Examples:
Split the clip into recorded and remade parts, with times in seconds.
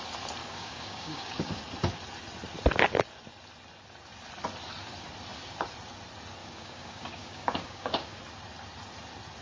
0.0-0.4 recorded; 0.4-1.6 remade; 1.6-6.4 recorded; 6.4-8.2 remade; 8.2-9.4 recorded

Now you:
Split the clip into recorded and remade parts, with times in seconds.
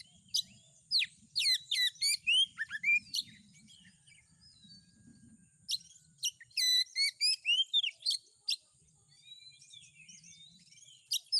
0.0-11.4 recorded